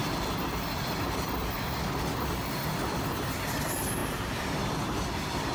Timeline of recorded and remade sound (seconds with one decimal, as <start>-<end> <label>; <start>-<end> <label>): 0.0-5.5 recorded